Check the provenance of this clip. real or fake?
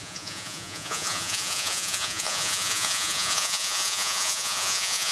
fake